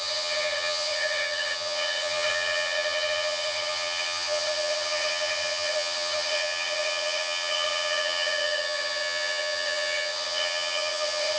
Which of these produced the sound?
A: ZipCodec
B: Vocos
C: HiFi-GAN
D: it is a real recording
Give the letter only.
C